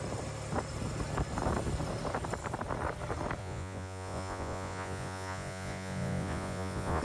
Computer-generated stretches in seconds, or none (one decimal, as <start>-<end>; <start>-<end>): 3.4-7.0